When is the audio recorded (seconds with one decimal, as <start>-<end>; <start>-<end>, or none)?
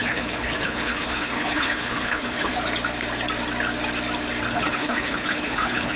2.5-4.5